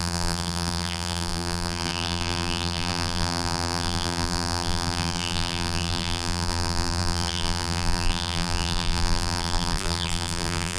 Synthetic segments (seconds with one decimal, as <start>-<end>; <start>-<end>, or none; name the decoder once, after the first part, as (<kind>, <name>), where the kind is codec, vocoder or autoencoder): 0.0-10.8 (vocoder, BigVGAN v2)